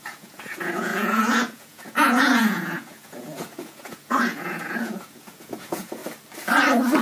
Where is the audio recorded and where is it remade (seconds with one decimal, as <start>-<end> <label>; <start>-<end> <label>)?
0.0-6.0 remade; 6.0-7.0 recorded